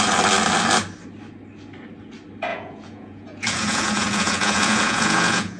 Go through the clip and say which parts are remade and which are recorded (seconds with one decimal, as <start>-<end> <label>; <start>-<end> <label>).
0.0-2.5 recorded; 2.5-5.6 remade